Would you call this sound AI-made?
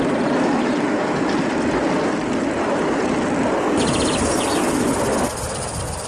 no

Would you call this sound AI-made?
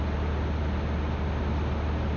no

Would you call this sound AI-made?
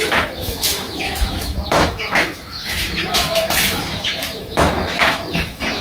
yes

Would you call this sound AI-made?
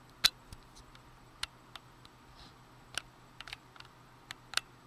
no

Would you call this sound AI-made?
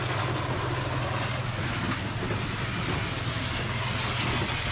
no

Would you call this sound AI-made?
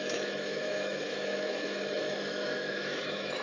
yes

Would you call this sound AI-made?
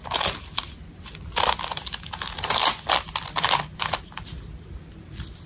no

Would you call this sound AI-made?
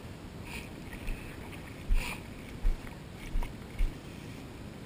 no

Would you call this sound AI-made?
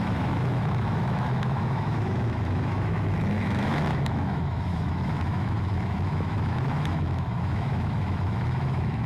yes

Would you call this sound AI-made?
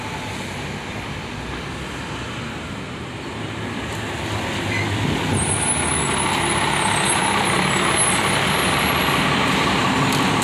no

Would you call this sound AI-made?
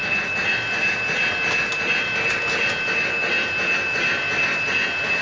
no